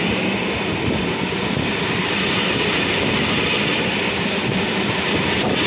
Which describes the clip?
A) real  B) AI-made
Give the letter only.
A